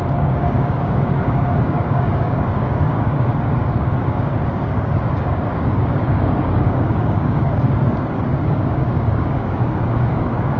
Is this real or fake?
fake